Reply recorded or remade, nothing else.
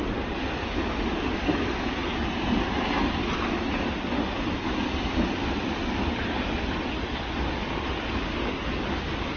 recorded